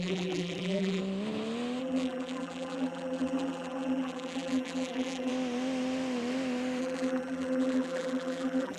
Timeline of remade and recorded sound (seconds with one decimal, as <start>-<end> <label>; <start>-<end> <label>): 0.0-1.0 remade; 1.0-1.8 recorded; 1.8-5.3 remade; 5.3-6.8 recorded; 6.8-8.8 remade